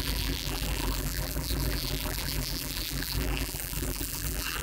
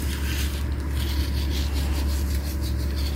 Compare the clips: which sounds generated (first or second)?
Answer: first